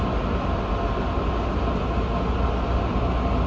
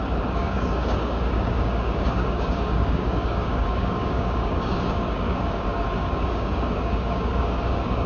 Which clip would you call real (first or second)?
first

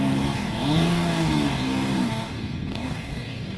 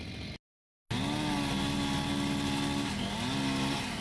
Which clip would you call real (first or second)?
second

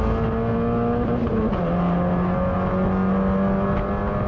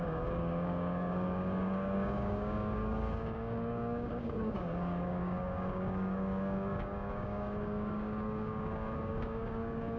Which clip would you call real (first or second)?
first